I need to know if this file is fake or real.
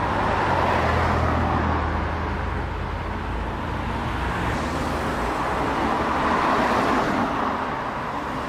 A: real